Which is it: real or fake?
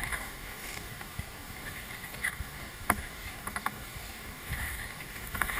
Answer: fake